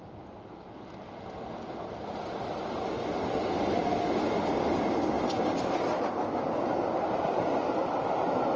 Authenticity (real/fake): real